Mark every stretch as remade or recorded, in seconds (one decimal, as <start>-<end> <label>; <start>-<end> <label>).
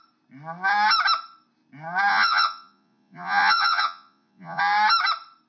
0.0-2.1 recorded; 2.1-4.6 remade; 4.6-5.5 recorded